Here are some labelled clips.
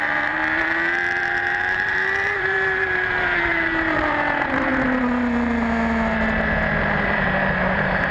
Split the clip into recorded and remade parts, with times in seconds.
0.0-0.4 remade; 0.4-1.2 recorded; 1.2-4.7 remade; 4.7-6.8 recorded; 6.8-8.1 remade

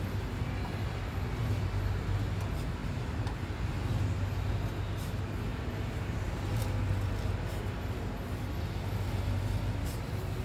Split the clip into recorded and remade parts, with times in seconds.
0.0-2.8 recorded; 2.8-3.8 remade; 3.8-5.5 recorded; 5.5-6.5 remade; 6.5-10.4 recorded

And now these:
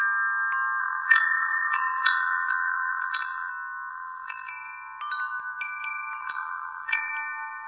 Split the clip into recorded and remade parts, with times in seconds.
0.0-0.8 recorded; 0.8-3.5 remade; 3.5-3.9 recorded; 3.9-4.5 remade; 4.5-6.2 recorded; 6.2-7.1 remade; 7.1-7.7 recorded

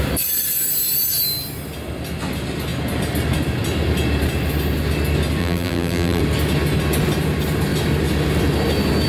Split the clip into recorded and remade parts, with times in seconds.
0.0-5.4 recorded; 5.4-6.2 remade; 6.2-9.1 recorded